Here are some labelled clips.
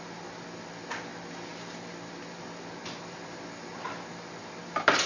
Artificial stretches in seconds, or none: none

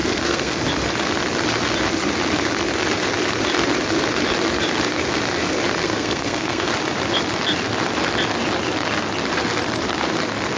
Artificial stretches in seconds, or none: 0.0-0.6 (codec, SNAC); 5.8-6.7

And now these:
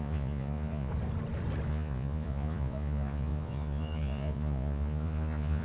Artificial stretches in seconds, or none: 0.0-0.9 (vocoder, Vocos); 1.7-5.6

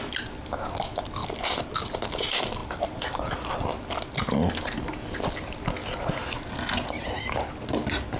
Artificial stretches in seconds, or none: none

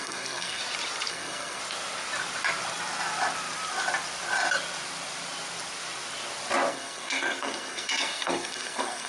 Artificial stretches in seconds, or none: 0.0-0.6 (codec, SNAC); 1.1-1.6; 6.7-9.1